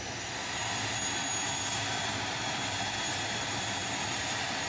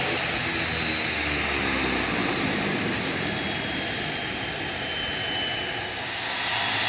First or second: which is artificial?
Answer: first